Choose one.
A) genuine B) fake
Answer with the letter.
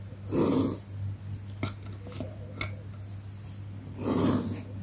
A